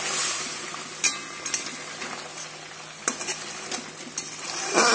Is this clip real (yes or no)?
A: yes